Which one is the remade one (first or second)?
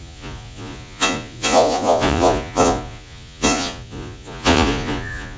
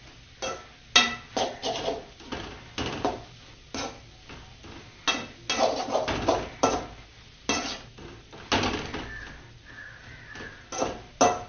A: first